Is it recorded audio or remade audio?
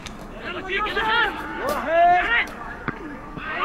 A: remade